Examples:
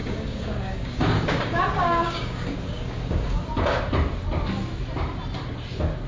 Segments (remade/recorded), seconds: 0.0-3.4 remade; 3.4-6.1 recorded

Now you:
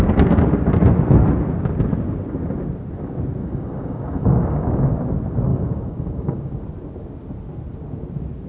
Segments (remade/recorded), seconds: 0.0-3.4 recorded; 3.4-4.8 remade; 4.8-5.5 recorded; 5.5-6.5 remade; 6.5-8.5 recorded

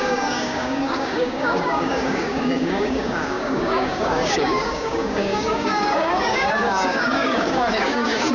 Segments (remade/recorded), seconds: 0.0-8.3 remade